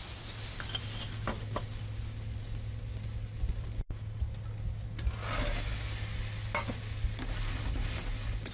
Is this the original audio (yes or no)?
yes